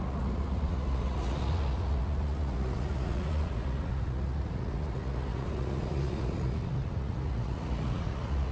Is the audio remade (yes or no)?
yes